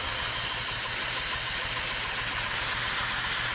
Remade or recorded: recorded